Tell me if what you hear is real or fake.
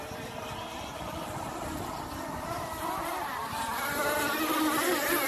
real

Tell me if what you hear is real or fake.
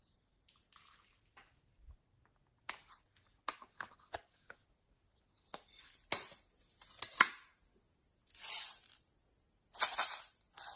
real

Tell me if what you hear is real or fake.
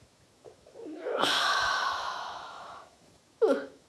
fake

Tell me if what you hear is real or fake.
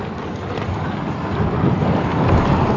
real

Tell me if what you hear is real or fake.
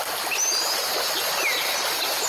real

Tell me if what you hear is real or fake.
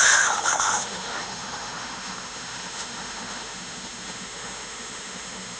fake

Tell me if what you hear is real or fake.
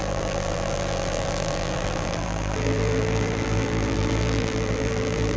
fake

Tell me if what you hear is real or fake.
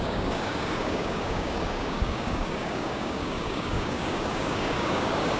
fake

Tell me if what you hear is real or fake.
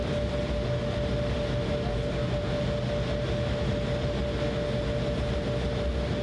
real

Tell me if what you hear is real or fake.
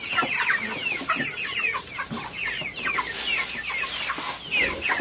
real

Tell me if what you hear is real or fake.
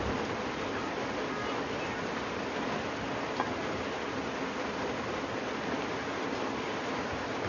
real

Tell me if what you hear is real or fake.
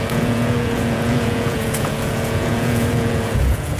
fake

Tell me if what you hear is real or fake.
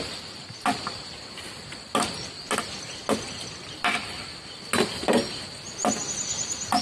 real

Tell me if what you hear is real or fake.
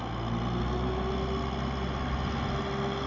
real